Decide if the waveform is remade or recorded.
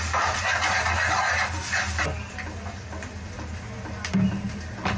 recorded